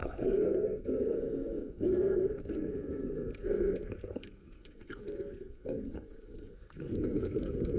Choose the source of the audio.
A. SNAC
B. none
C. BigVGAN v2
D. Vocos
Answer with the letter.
A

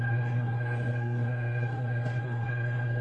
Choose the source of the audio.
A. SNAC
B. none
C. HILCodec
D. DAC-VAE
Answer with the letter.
A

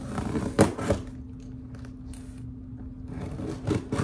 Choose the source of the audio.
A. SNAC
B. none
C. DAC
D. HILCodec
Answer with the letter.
B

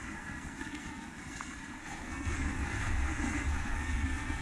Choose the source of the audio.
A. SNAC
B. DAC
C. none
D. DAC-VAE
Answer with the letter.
A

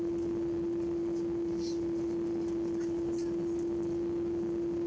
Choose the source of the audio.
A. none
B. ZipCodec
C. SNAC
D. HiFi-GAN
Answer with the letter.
A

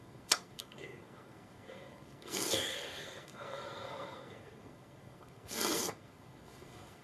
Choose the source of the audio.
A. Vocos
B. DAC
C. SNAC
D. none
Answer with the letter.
C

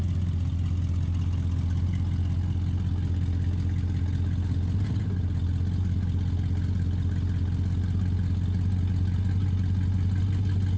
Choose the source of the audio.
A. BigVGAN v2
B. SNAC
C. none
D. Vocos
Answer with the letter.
C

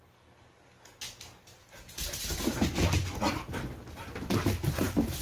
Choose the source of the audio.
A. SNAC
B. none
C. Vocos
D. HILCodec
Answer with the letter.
B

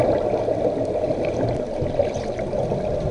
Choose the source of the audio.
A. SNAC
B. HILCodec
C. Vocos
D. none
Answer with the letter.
D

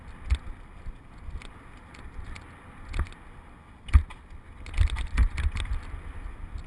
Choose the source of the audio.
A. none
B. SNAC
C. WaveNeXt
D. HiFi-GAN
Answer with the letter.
A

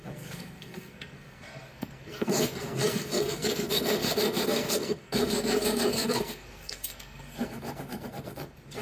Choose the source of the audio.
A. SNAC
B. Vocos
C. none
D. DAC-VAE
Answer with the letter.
A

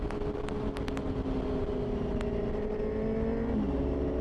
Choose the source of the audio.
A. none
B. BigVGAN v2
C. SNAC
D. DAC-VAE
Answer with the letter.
A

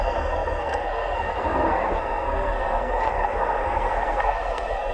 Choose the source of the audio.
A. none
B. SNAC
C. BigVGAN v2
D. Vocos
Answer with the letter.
B